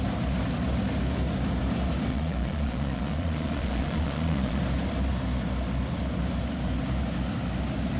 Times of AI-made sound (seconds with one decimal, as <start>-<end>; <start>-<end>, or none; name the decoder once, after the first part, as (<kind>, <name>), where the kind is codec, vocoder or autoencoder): 2.1-4.6 (vocoder, Vocos)